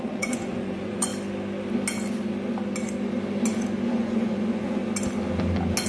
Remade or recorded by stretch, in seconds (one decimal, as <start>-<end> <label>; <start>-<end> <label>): 0.0-1.1 remade; 1.1-3.9 recorded; 3.9-4.8 remade; 4.8-5.9 recorded